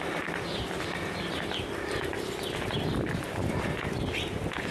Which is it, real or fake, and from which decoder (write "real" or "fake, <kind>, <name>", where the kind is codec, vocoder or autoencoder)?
real